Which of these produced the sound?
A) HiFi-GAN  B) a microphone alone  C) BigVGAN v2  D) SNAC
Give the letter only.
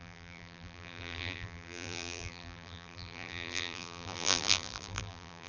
C